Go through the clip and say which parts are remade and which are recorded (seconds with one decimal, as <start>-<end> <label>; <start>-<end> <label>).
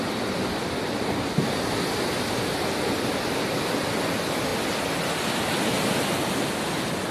0.0-7.1 recorded